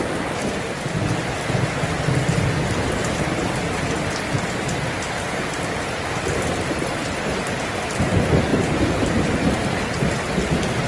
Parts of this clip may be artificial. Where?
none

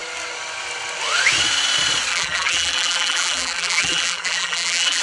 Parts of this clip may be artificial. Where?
2.1-5.0 (vocoder, BigVGAN v2)

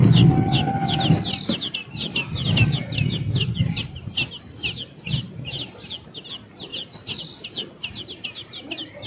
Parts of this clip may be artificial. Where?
none

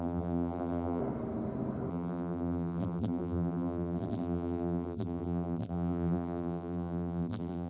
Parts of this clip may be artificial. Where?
0.0-1.0 (vocoder, BigVGAN v2); 1.9-7.7

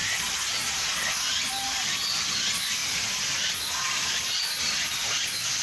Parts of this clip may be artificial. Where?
none

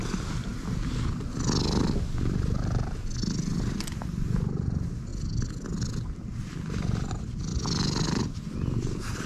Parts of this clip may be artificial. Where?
0.0-0.5 (vocoder, BigVGAN v2); 3.8-5.1; 7.1-7.5

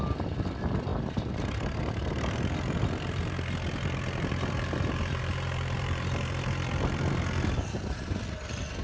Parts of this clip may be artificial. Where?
0.0-8.8 (vocoder, BigVGAN v2)